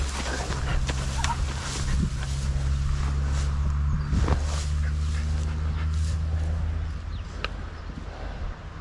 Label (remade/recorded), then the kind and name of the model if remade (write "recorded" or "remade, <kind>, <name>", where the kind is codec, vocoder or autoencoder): recorded